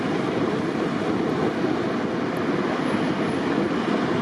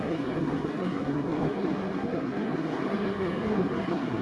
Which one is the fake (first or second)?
second